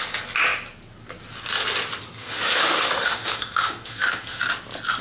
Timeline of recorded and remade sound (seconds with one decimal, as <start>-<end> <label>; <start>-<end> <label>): 0.0-2.2 recorded; 2.2-4.4 remade; 4.4-5.0 recorded